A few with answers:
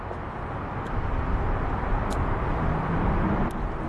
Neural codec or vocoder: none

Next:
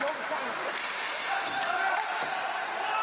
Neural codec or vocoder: none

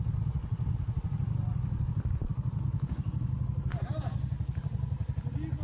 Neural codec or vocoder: none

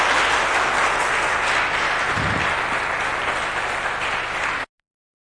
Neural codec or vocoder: none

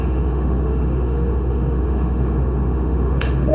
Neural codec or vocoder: autoencoder, DAC-VAE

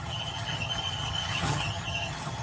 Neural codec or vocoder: vocoder, HiFi-GAN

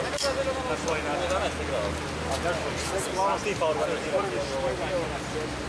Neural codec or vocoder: none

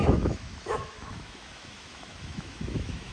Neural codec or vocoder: autoencoder, DAC-VAE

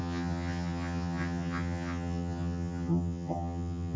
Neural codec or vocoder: vocoder, HiFi-GAN